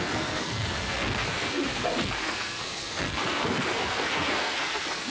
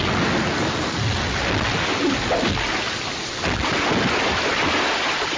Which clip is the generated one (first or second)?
first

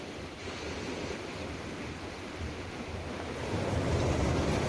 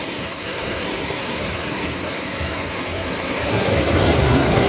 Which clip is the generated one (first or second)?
second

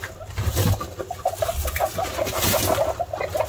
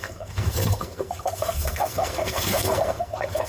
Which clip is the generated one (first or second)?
second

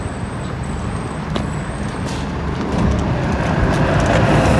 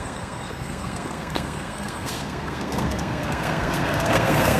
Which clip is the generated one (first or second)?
second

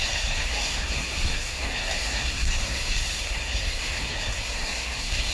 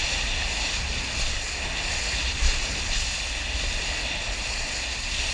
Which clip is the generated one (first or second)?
first